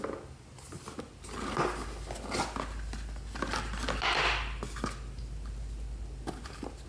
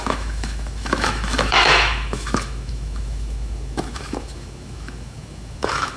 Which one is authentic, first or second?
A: first